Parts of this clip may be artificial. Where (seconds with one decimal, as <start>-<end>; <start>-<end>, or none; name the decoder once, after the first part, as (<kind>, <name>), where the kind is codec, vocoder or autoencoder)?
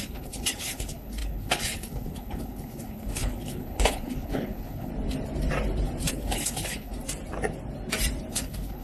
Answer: 0.0-4.9 (codec, HILCodec); 6.1-6.9; 8.3-8.8